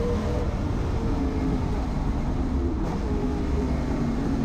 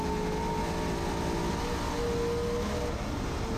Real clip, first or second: second